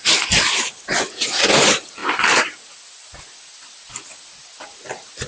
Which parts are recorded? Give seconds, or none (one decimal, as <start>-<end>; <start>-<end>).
0.0-5.3